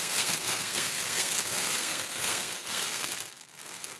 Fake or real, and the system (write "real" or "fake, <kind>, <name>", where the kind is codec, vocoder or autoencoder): fake, codec, SNAC